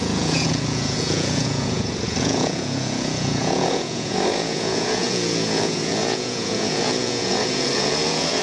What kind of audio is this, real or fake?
fake